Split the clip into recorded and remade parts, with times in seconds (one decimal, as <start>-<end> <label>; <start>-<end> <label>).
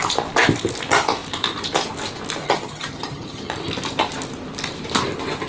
0.0-2.4 recorded; 2.4-3.5 remade; 3.5-5.5 recorded